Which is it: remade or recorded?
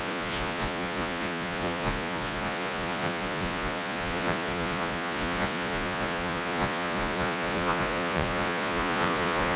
remade